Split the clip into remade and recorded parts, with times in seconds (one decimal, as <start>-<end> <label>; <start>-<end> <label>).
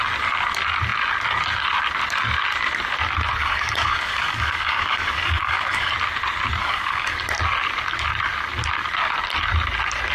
0.0-3.4 recorded; 3.4-5.9 remade; 5.9-6.6 recorded; 6.6-7.2 remade; 7.2-10.1 recorded